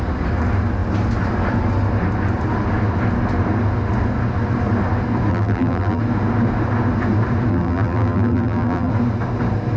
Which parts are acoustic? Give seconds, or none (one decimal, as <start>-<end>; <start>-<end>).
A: 0.0-5.3; 6.0-7.5; 8.9-9.8